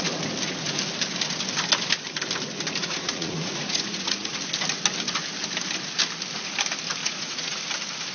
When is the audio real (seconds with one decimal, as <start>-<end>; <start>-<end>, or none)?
0.0-2.8; 4.3-7.0; 7.6-8.1